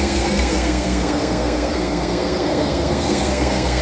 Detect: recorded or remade remade